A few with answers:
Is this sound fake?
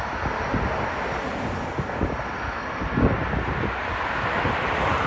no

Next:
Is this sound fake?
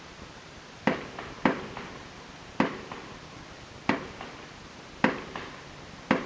no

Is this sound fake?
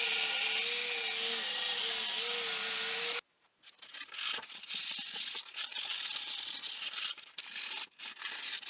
no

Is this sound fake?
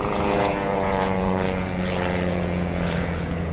yes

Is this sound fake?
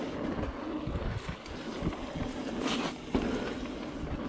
no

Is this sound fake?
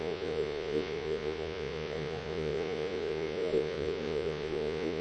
yes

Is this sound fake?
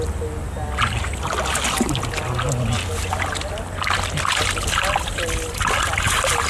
no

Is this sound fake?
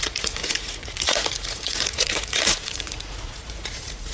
yes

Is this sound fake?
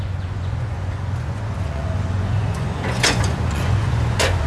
yes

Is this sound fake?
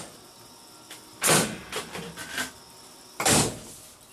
no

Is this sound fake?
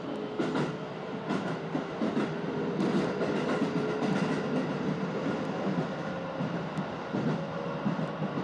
no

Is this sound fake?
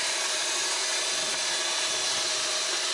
no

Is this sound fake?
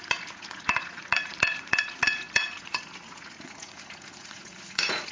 yes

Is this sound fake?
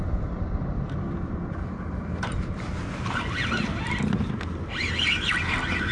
no